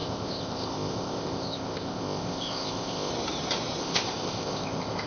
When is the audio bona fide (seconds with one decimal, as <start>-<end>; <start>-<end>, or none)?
3.1-3.8